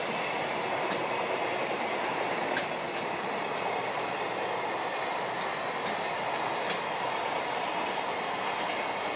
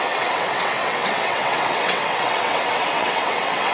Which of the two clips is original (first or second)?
first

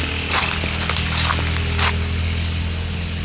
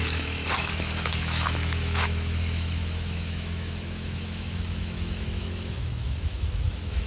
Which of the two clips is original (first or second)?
first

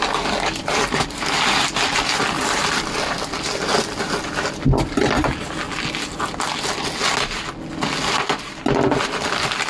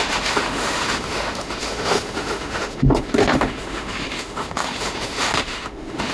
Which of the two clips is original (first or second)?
first